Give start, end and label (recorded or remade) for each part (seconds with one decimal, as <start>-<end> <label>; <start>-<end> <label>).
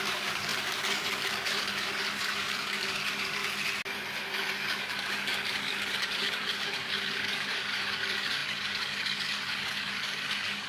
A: 0.0-3.4 remade; 3.4-4.2 recorded; 4.2-10.7 remade